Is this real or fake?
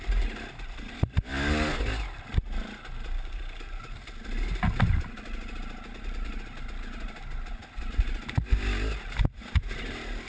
real